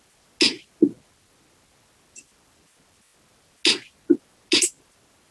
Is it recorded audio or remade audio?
recorded